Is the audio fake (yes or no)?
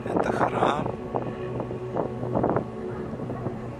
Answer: no